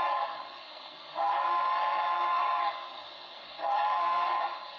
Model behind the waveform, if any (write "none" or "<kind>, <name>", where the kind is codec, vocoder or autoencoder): codec, SNAC